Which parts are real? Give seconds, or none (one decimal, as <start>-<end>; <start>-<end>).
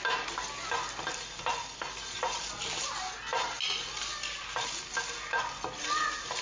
0.0-6.4